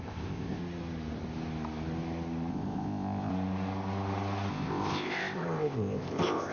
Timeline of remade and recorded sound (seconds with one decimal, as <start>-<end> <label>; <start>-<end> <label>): 0.0-0.6 remade; 0.6-2.5 recorded; 2.5-3.3 remade; 3.3-4.5 recorded; 4.5-6.5 remade

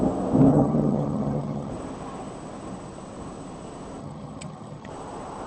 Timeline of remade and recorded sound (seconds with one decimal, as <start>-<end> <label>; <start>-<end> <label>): 0.0-0.5 recorded; 0.5-1.7 remade; 1.7-4.0 recorded; 4.0-4.9 remade; 4.9-5.5 recorded